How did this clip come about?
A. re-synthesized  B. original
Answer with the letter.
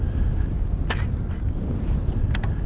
B